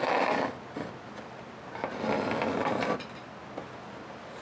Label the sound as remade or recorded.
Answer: recorded